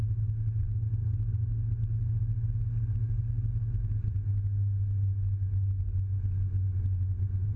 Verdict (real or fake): real